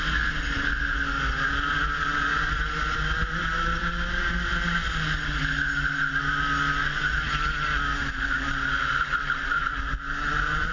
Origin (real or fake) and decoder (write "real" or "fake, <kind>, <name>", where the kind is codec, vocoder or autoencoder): real